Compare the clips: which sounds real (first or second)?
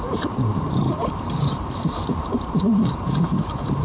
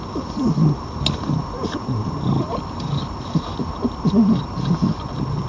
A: second